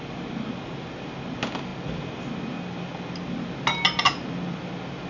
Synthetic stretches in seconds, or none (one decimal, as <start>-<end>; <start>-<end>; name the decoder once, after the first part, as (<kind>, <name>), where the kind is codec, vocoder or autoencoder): none